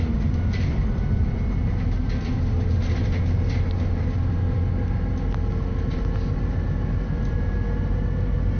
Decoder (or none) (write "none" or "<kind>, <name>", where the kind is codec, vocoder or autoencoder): none